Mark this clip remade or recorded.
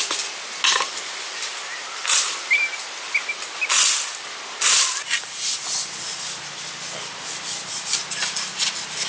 recorded